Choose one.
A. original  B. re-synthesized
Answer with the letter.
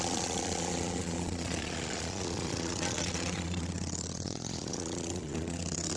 B